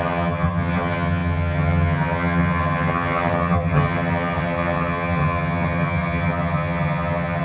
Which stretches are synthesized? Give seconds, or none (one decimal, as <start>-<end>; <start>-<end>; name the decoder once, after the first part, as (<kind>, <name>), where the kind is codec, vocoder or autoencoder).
0.0-7.4 (vocoder, HiFi-GAN)